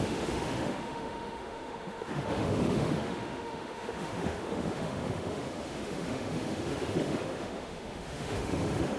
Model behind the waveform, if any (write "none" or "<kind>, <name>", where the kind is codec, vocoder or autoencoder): autoencoder, DAC-VAE